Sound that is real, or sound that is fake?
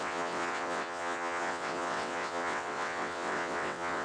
fake